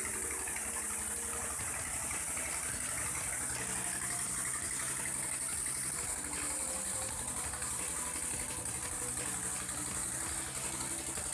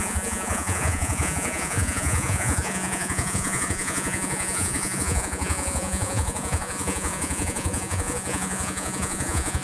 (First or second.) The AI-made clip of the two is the second